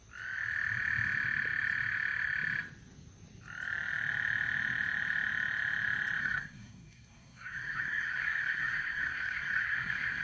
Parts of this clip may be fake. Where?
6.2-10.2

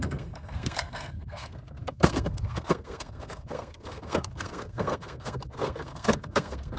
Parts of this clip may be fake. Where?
0.0-6.8

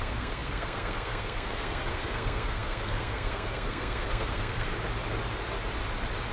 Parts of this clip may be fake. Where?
0.0-4.7

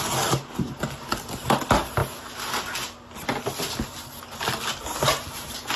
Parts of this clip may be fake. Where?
none

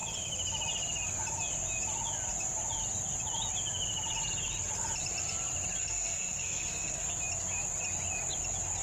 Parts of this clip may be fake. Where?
5.8-7.1

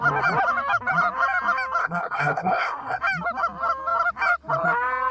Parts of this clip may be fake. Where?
1.8-3.0

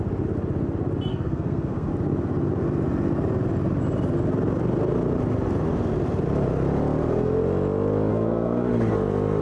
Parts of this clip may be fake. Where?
1.1-1.9; 8.1-8.7